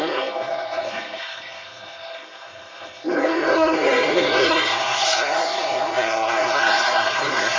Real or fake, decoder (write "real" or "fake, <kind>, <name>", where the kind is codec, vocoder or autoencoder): fake, codec, SNAC